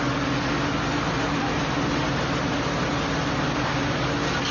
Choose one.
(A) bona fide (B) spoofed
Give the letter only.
A